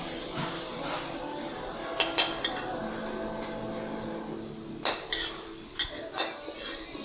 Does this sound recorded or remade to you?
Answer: recorded